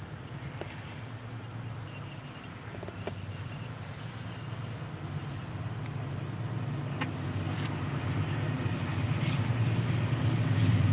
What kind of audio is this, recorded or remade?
recorded